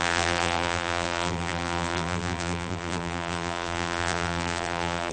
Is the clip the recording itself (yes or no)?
no